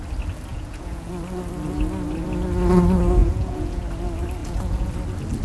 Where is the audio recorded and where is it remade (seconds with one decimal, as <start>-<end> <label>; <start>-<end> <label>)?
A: 0.0-0.5 recorded; 0.5-1.1 remade; 1.1-3.2 recorded; 3.2-3.8 remade; 3.8-4.4 recorded; 4.4-4.9 remade; 4.9-5.4 recorded